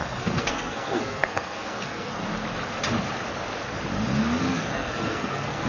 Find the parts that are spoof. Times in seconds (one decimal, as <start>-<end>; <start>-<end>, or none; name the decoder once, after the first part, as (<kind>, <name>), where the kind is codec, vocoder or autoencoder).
0.0-2.2 (codec, SNAC); 4.4-5.7